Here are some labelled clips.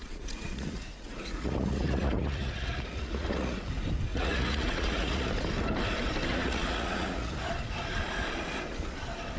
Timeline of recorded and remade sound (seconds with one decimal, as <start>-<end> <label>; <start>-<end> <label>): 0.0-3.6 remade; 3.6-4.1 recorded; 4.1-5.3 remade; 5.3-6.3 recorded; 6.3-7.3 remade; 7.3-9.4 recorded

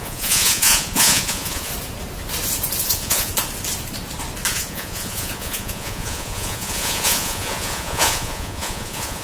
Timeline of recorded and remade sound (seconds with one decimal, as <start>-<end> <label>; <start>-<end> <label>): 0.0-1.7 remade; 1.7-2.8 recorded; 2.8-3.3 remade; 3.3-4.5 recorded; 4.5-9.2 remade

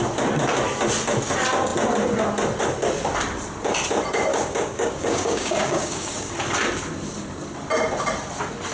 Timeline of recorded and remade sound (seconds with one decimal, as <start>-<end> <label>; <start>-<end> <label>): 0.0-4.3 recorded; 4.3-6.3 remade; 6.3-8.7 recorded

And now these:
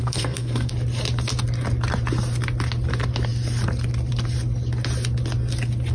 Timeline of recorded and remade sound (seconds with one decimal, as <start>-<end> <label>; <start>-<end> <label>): 0.0-0.7 remade; 0.7-5.9 recorded